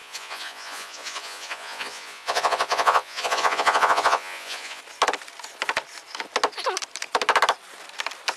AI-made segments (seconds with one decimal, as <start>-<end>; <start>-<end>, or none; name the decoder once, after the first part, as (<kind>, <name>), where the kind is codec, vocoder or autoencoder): 0.0-4.8 (vocoder, Vocos)